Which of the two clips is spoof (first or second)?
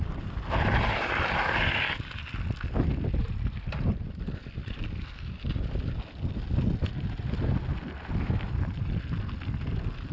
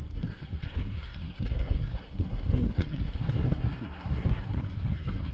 second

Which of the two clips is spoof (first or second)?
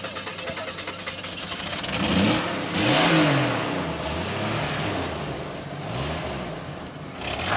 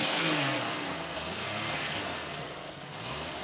second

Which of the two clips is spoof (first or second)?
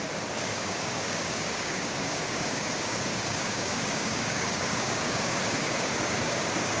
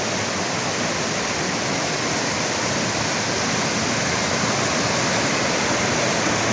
first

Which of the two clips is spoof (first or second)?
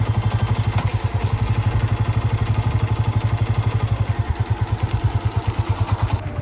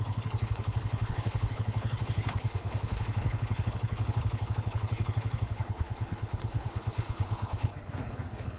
second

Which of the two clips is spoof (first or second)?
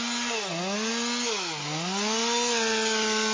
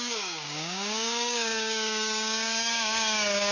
second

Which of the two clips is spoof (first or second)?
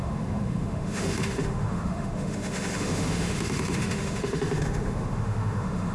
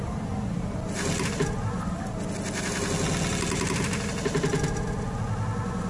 first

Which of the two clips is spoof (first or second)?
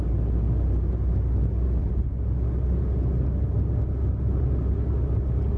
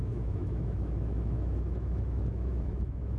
second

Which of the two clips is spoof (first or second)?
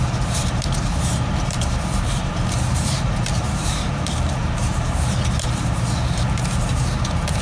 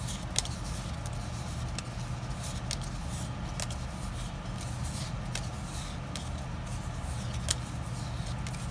first